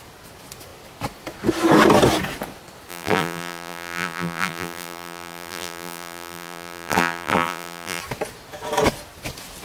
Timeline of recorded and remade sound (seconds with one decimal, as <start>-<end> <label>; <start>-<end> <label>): 0.0-2.9 recorded; 2.9-8.0 remade; 8.0-9.6 recorded